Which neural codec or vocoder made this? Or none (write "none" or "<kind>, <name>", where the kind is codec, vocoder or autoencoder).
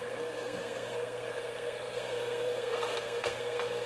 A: codec, SNAC